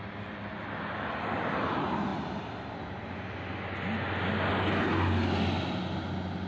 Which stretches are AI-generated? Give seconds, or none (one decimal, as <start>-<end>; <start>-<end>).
none